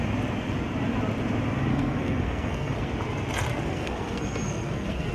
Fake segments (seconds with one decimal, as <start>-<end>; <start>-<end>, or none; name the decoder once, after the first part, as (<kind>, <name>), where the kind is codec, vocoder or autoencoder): 1.7-2.9 (codec, SNAC); 3.5-5.1